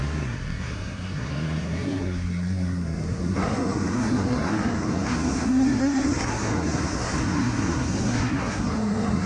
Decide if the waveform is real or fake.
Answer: fake